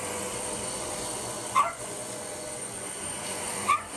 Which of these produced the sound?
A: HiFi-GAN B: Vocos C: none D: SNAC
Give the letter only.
B